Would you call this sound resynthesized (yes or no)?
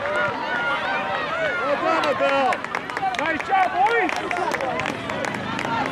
no